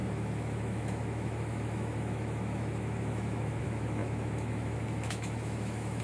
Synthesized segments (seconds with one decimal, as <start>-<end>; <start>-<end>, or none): 0.0-6.0